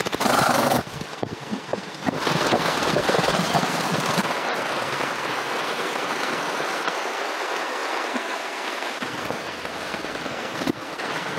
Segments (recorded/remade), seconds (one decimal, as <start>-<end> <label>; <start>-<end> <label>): 0.0-11.4 remade